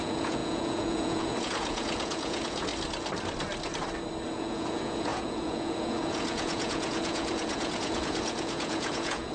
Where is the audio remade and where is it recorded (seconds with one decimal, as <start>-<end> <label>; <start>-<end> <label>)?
0.0-2.7 remade; 2.7-4.3 recorded; 4.3-9.3 remade